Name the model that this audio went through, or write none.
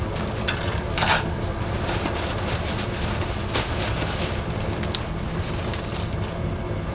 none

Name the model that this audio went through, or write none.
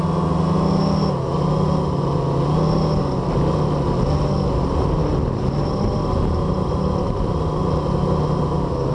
none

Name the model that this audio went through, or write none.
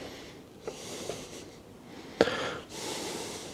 none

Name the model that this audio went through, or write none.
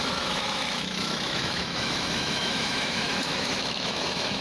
autoencoder, DAC-VAE